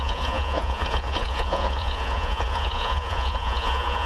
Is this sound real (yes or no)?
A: no